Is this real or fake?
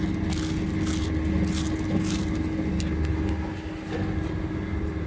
real